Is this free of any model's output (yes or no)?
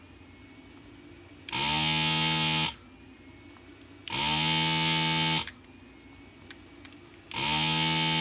yes